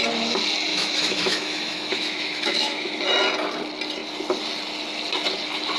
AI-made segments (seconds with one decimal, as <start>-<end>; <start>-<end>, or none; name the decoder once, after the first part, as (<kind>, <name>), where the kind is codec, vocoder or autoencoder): 0.7-3.0 (autoencoder, DAC-VAE)